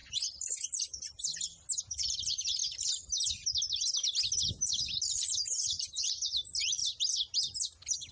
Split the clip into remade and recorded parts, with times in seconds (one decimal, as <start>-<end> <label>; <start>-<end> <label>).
0.0-1.8 recorded; 1.8-2.6 remade; 2.6-4.5 recorded; 4.5-6.8 remade; 6.8-8.1 recorded